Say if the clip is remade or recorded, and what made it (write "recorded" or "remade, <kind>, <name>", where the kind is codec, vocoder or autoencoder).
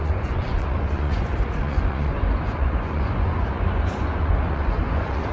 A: remade, vocoder, Vocos